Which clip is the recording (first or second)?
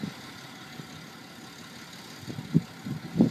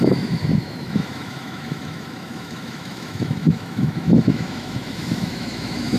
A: first